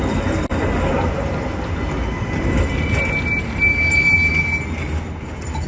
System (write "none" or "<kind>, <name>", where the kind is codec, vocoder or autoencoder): none